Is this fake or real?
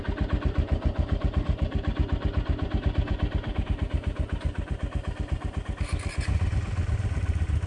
fake